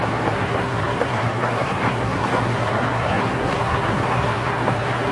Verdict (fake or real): fake